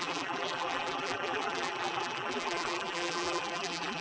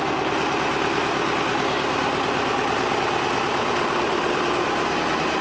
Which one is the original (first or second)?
second